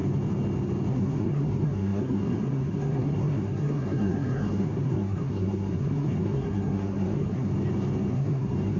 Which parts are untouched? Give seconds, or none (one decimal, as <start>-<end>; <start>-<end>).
0.0-0.9; 7.5-8.1